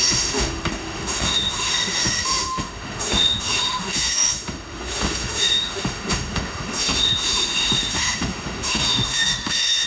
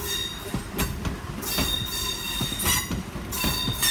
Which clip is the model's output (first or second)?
first